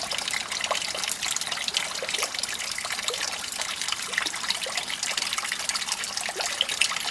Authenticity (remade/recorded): recorded